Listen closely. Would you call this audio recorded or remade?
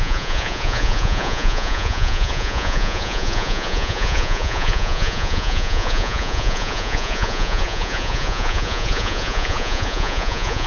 remade